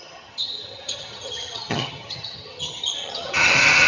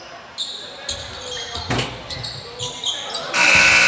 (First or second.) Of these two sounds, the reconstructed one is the first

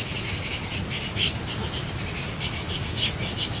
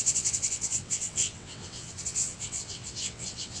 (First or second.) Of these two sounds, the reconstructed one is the second